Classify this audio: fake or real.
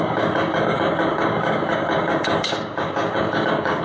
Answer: fake